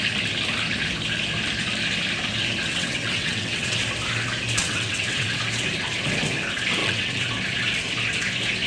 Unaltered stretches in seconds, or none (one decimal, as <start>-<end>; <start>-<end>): 0.0-2.7; 3.8-4.6; 5.4-6.8; 7.3-8.7